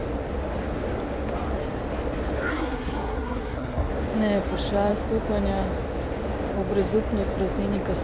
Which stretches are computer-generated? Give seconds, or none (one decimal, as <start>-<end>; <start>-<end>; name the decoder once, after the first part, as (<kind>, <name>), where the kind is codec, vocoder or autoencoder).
2.5-3.9 (codec, SNAC)